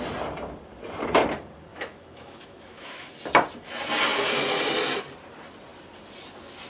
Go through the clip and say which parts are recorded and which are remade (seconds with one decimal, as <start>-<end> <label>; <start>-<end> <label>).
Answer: 0.0-1.7 recorded; 1.7-3.1 remade; 3.1-6.7 recorded